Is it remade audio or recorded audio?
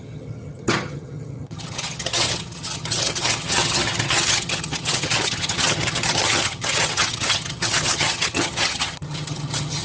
remade